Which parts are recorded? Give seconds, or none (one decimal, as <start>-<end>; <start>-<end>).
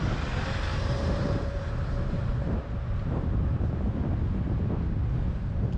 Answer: 0.0-0.7; 4.0-5.8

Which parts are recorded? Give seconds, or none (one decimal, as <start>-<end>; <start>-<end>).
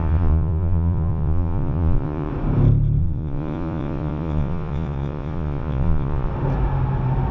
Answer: 2.3-3.0; 6.3-7.3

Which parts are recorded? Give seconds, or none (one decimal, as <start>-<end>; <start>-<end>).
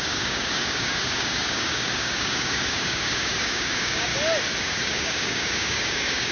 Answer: 4.1-4.6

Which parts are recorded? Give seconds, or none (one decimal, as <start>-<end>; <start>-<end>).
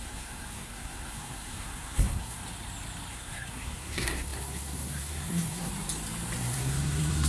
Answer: 2.4-3.1; 5.7-6.4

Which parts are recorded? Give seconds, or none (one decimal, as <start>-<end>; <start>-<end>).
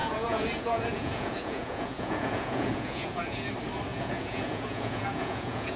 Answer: 3.5-3.9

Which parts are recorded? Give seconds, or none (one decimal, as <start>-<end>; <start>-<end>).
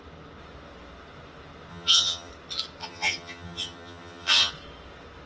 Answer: 0.0-1.7; 2.3-2.8; 4.5-5.3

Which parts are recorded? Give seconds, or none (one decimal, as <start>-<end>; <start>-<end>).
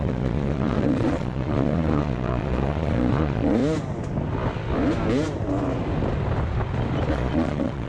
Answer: 3.6-7.1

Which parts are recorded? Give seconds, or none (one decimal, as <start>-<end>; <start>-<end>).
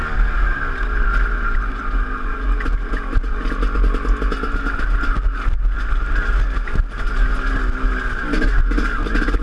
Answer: 0.0-9.4